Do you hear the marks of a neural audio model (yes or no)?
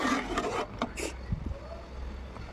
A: no